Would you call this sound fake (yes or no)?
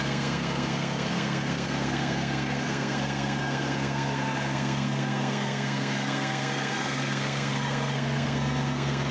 yes